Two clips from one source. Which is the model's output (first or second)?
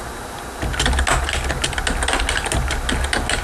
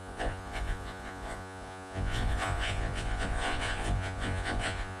second